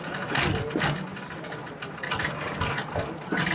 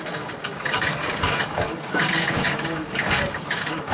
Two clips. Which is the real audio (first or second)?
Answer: first